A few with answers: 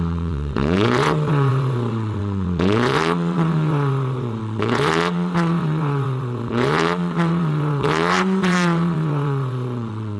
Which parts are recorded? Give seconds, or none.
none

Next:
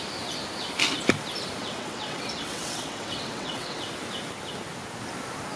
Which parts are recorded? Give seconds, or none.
0.0-1.6; 3.9-5.6

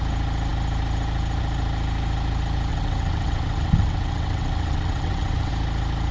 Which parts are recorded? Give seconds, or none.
0.0-2.7; 5.5-6.1

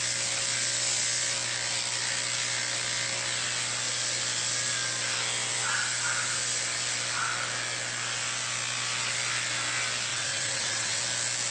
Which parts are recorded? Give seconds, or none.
0.0-10.1; 11.0-11.5